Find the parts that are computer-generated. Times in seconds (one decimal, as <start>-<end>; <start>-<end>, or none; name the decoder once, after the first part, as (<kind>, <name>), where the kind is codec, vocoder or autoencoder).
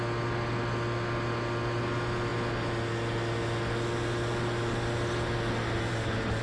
none